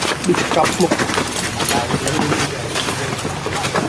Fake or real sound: real